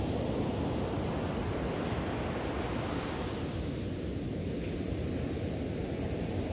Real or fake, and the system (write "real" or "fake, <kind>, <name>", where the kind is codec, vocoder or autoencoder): real